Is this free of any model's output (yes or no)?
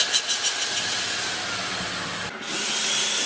yes